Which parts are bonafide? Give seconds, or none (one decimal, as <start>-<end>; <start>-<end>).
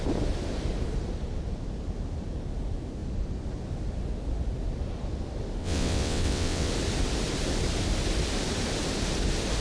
0.0-5.6; 6.7-9.6